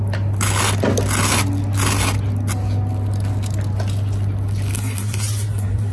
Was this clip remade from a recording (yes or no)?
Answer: no